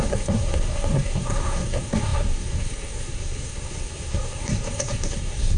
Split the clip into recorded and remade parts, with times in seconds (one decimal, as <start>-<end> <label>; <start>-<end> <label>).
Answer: 0.0-5.6 remade